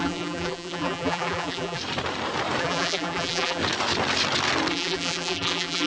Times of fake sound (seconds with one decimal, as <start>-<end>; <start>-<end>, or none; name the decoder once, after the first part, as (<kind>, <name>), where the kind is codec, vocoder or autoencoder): 0.0-1.8 (vocoder, BigVGAN v2); 2.6-3.6; 4.7-5.9